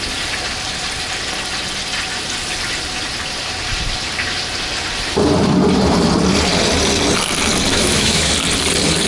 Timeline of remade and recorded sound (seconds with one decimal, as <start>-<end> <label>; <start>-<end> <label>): 0.0-7.7 recorded; 7.7-8.3 remade; 8.3-9.1 recorded